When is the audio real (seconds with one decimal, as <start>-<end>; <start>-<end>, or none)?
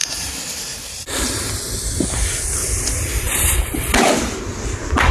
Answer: 0.0-3.1; 3.8-5.1